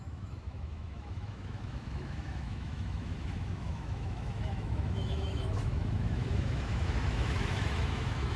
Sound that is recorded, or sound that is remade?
remade